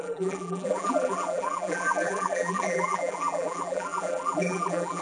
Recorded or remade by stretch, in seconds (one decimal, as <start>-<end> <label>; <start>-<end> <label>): 0.0-5.0 remade